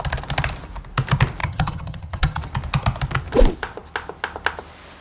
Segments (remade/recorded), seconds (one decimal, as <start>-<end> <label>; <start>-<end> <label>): 0.0-1.4 recorded; 1.4-2.4 remade; 2.4-5.0 recorded